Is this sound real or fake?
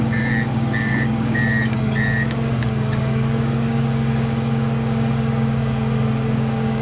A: fake